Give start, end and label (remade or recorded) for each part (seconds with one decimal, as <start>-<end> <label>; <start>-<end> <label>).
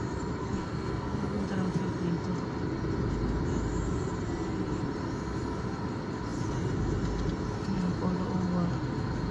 0.0-0.4 recorded; 0.4-1.4 remade; 1.4-9.3 recorded